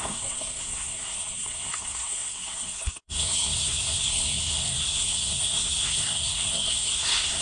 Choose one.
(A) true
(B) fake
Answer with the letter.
B